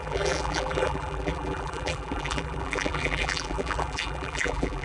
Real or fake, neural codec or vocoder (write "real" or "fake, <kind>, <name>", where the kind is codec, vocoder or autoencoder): fake, vocoder, BigVGAN v2